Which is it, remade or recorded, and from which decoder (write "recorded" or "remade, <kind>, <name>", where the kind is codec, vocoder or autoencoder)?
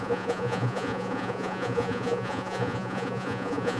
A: remade, vocoder, Vocos